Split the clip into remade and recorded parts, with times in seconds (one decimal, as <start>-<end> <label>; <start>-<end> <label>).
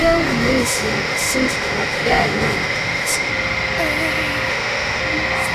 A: 0.0-3.3 remade; 3.3-4.5 recorded; 4.5-5.0 remade; 5.0-5.5 recorded